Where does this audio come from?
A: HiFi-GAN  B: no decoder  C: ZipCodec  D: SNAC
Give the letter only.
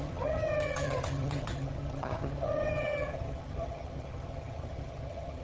A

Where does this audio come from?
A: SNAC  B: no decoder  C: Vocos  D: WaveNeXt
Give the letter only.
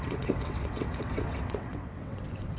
D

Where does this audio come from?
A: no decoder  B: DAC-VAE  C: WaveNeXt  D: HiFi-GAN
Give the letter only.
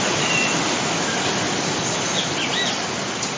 A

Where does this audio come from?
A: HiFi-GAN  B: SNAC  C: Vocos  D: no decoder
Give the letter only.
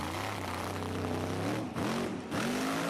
D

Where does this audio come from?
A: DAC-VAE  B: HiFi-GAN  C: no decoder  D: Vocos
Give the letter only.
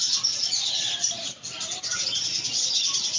C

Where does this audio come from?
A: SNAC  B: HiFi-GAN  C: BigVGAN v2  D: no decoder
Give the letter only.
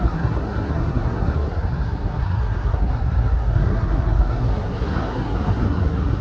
A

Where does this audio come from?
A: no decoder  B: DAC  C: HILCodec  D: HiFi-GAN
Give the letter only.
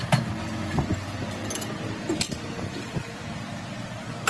A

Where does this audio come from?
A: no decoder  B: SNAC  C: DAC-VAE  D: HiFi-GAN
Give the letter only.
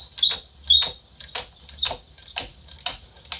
A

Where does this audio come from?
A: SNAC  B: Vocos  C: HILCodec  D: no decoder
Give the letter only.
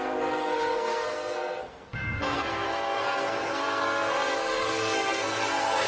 A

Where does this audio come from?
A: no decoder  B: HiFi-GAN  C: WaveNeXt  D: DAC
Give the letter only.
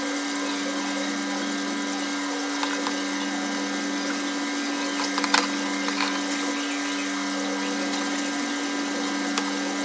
A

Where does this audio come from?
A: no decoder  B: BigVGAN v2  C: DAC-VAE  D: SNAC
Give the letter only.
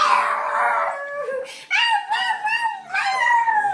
A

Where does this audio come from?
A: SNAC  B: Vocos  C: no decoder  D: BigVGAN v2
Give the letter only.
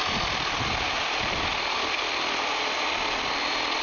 C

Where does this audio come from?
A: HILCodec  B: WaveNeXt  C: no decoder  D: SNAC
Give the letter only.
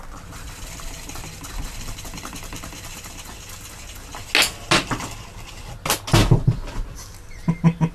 C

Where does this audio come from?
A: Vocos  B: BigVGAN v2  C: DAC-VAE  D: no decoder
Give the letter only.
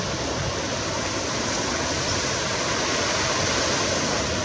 D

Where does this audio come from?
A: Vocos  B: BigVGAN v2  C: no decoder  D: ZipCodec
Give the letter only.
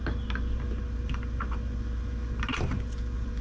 C